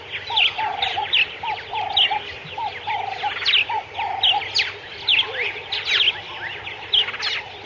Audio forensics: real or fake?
real